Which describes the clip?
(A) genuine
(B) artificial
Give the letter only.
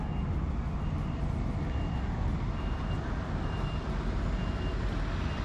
A